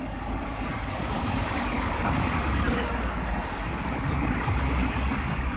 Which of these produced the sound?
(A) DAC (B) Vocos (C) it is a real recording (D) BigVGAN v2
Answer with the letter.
A